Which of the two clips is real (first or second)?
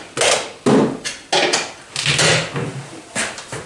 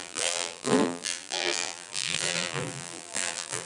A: first